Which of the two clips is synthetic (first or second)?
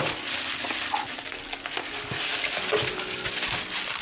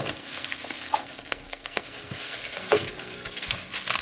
second